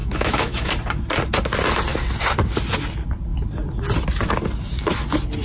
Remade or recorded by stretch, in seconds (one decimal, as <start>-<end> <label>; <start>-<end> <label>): 0.0-0.7 remade; 0.7-5.4 recorded